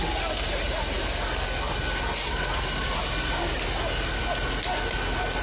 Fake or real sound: real